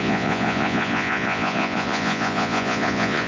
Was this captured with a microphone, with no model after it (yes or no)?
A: no